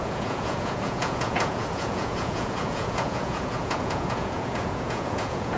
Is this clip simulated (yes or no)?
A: yes